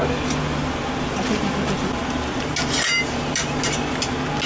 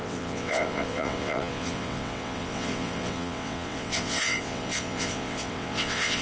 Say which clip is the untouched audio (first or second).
first